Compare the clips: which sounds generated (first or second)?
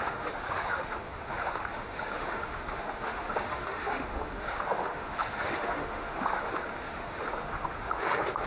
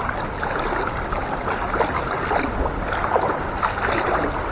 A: first